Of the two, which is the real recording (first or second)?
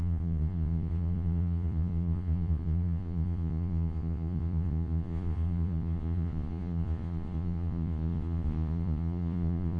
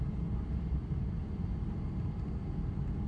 second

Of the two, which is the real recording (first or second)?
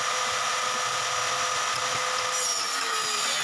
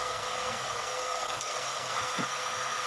first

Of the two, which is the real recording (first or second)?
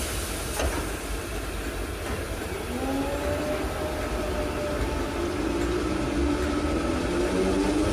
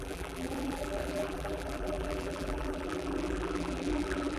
first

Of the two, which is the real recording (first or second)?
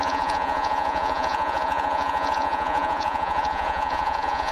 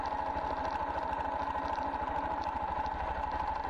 second